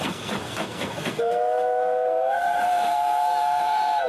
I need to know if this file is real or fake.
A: fake